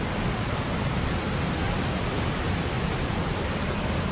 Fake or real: real